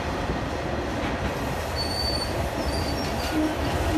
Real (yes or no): yes